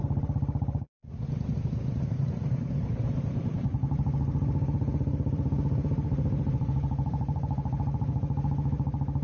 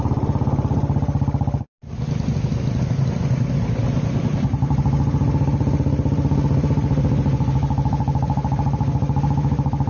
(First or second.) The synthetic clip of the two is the first